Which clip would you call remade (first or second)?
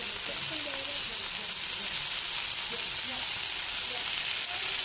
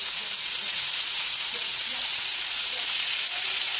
second